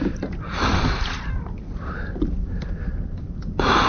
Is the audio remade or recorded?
recorded